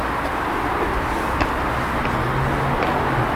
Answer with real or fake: real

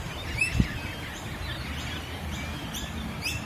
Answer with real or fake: real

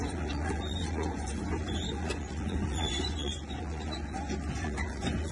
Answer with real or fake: fake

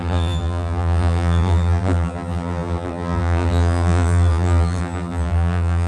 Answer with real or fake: fake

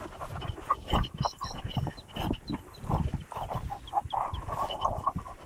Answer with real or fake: real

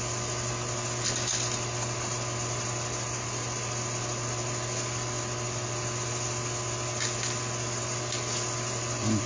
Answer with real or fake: real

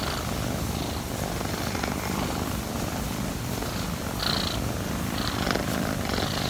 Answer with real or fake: real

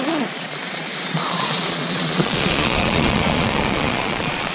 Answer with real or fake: fake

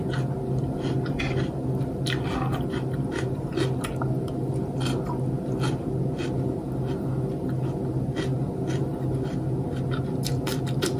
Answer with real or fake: real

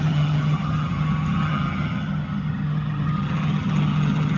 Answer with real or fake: fake